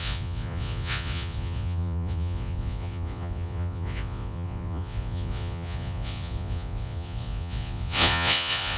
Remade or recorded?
remade